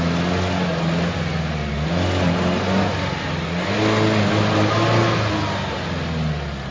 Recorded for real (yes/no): yes